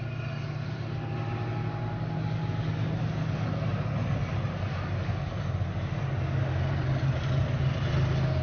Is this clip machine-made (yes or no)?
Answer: no